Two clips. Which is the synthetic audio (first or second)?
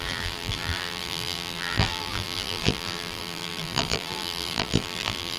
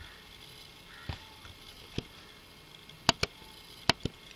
first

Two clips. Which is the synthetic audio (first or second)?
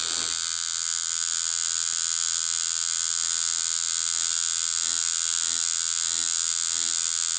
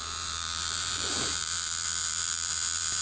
second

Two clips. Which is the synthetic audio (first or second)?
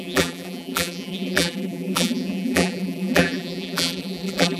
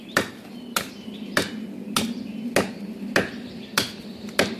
first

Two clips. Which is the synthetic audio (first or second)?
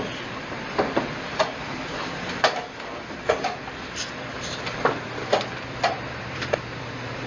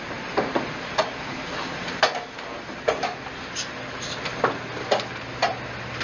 first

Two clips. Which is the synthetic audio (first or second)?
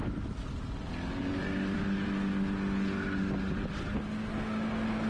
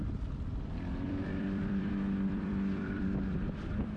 second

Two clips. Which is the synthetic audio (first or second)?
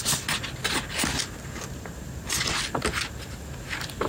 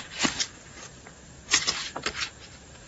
second